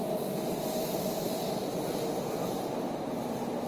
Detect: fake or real real